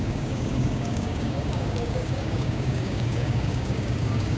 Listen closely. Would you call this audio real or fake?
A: fake